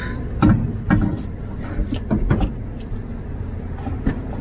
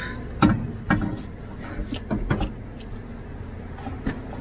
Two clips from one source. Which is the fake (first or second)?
first